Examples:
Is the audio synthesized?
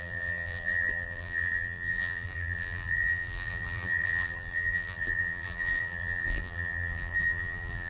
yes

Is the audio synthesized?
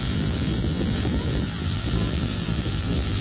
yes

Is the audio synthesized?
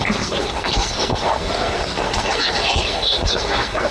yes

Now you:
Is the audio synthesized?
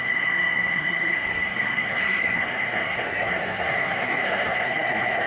yes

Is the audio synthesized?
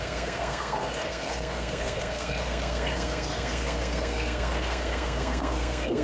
yes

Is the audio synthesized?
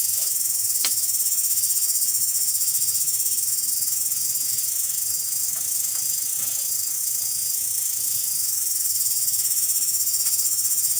yes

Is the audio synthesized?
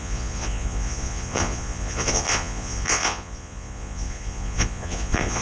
yes